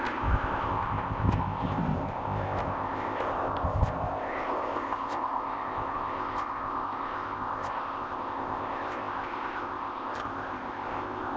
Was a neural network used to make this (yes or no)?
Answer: yes